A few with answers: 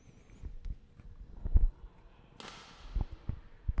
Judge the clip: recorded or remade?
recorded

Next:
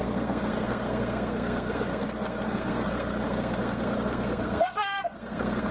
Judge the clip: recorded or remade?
remade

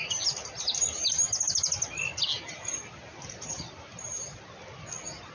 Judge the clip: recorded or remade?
recorded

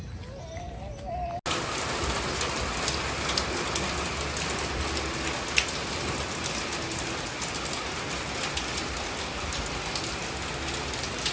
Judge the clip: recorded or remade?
recorded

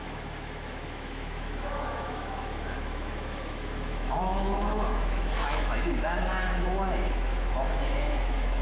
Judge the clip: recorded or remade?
remade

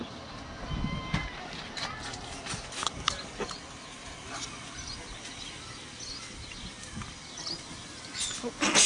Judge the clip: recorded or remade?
recorded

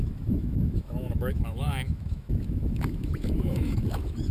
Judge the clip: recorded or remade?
remade